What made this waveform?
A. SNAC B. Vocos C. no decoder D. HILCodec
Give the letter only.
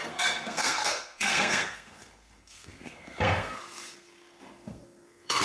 A